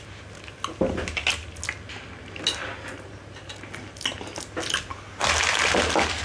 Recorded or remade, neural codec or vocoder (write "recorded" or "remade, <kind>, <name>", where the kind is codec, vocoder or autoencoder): recorded